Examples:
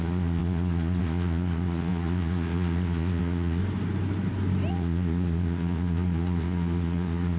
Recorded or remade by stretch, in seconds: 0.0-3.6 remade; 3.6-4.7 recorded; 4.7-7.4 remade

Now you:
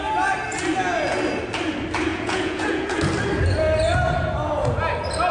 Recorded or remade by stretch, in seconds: 0.0-2.1 recorded; 2.1-3.0 remade; 3.0-5.3 recorded

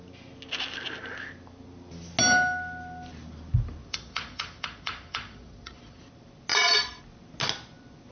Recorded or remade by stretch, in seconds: 0.0-3.8 recorded; 3.8-6.0 remade; 6.0-6.5 recorded; 6.5-7.0 remade; 7.0-8.1 recorded

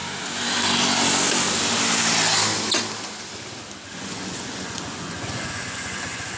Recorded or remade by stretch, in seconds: 0.0-3.8 recorded; 3.8-6.4 remade

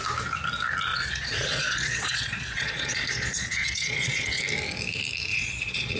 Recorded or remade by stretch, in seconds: 0.0-0.9 recorded; 0.9-4.4 remade; 4.4-5.3 recorded; 5.3-6.0 remade